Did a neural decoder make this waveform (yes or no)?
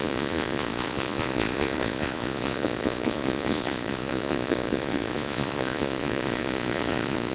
yes